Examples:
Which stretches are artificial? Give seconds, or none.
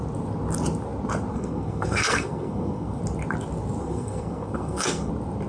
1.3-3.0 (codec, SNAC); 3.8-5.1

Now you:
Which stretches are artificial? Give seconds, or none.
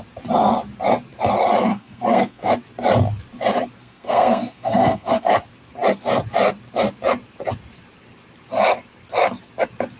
1.7-2.5 (codec, SNAC); 3.8-5.3